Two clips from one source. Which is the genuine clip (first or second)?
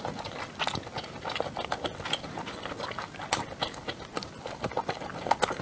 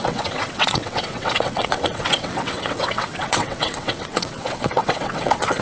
first